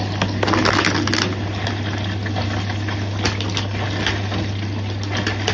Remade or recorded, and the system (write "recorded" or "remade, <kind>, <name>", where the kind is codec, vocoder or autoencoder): recorded